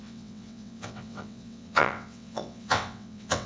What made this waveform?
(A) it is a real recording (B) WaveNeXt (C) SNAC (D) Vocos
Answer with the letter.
B